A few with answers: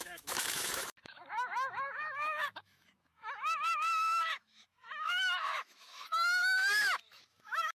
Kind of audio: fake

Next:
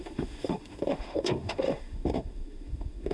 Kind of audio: fake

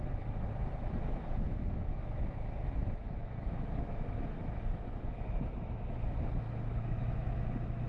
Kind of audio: fake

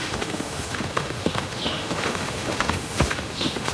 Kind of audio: fake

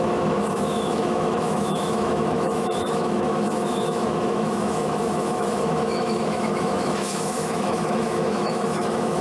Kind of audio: fake